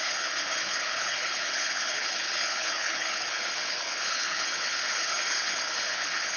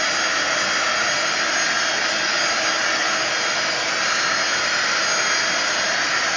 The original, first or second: second